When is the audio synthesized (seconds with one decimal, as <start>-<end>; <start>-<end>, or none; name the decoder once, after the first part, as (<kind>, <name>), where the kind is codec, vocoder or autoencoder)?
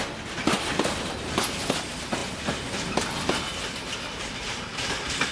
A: none